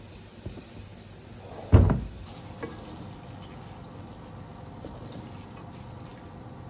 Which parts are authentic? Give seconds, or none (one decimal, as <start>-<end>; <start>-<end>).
0.0-6.7